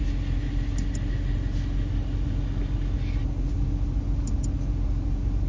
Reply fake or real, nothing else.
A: real